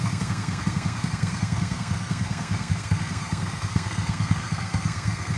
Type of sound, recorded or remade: remade